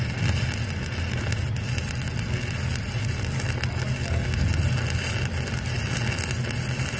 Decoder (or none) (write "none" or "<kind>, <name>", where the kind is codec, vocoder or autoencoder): none